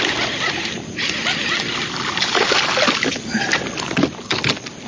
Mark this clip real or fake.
real